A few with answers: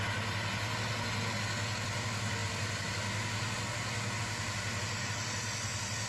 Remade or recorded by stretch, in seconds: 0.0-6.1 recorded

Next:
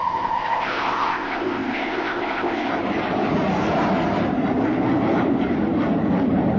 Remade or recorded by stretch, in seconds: 0.0-2.7 remade; 2.7-6.6 recorded

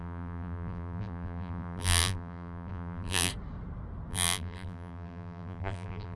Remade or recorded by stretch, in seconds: 0.0-3.3 remade; 3.3-4.1 recorded; 4.1-6.2 remade